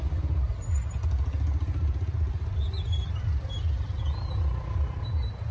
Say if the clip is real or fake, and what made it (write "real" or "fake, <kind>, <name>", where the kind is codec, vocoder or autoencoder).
real